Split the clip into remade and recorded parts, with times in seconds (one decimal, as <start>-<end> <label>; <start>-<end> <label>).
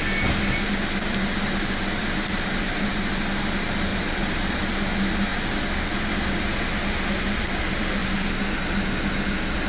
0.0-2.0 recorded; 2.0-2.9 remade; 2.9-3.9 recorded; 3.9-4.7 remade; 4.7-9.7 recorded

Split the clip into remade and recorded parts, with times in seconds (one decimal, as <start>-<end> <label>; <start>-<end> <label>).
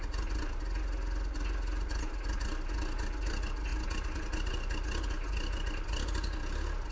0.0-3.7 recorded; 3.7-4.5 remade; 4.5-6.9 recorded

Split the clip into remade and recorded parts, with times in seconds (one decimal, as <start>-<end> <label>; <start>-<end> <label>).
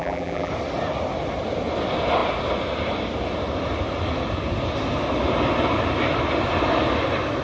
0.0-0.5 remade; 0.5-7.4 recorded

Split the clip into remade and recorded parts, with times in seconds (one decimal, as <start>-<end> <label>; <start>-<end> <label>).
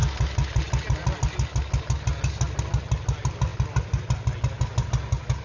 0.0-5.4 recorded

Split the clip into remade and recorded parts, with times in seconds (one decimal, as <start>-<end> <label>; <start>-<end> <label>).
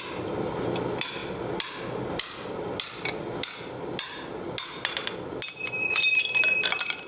0.0-7.1 recorded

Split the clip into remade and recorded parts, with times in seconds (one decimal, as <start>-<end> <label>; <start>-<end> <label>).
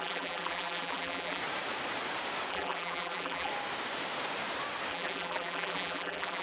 0.0-1.4 remade; 1.4-2.5 recorded; 2.5-3.5 remade; 3.5-4.9 recorded; 4.9-6.4 remade